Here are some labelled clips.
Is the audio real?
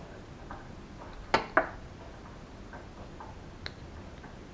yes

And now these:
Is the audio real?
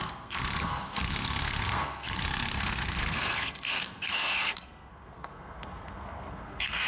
no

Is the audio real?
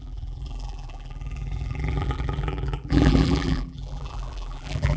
no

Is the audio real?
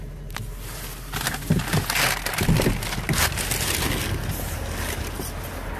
yes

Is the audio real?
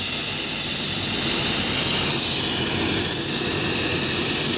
yes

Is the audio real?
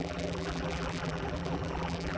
no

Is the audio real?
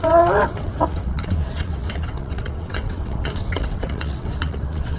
no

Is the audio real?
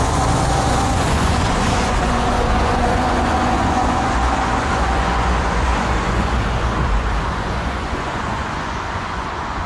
no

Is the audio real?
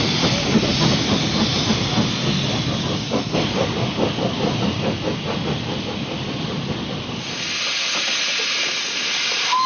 yes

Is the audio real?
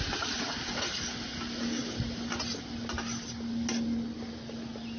yes